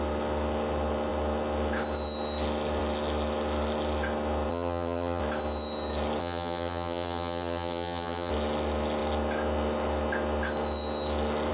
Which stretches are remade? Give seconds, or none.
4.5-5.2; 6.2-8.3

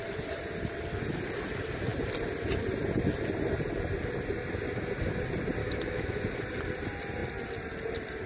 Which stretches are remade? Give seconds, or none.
5.6-6.2

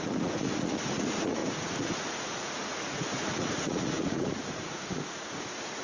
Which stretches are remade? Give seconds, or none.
0.0-5.8

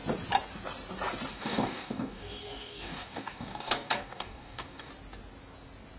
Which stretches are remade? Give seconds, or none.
1.3-4.9

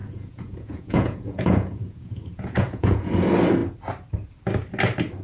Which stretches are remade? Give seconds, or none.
0.0-3.1

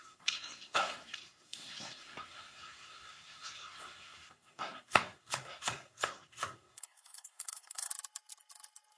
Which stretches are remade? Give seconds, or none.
0.0-7.9

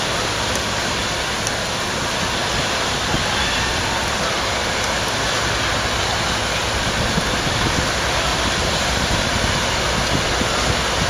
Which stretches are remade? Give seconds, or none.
8.3-9.8

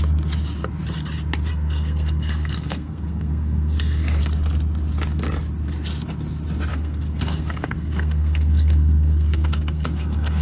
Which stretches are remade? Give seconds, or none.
1.5-4.2; 6.7-10.4